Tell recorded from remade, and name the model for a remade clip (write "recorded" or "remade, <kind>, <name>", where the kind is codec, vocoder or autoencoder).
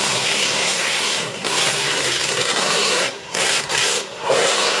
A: remade, codec, SNAC